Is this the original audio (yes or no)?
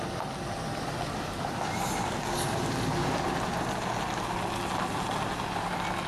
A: yes